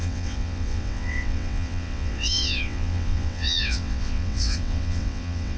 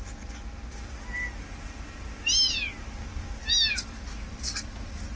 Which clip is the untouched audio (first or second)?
second